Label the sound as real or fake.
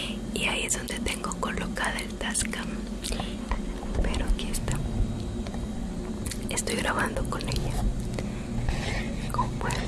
real